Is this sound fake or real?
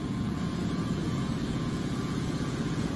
fake